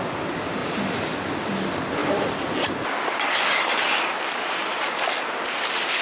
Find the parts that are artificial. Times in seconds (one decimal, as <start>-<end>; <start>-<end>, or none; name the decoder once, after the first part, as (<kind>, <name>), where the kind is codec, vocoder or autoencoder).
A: 0.6-1.1 (vocoder, BigVGAN v2)